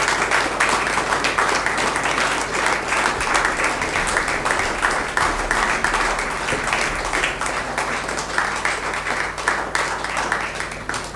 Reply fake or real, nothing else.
real